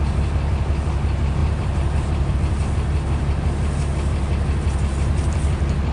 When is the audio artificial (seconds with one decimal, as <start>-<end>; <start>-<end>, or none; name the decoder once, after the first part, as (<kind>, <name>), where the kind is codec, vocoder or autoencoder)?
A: 1.4-2.3 (vocoder, BigVGAN v2)

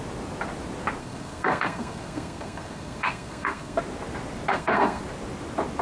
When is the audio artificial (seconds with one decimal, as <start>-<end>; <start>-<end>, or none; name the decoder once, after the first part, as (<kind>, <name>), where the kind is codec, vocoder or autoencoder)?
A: 1.0-3.8 (codec, SNAC); 4.5-5.0